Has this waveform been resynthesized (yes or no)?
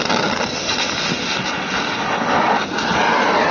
no